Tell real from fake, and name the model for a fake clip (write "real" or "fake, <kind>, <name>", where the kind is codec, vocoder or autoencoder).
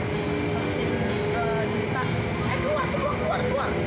real